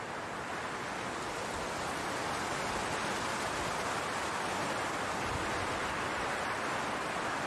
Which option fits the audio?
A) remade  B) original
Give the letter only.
B